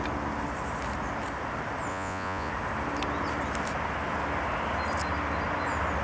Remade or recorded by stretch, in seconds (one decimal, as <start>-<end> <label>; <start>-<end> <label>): 0.0-1.9 recorded; 1.9-2.5 remade; 2.5-6.0 recorded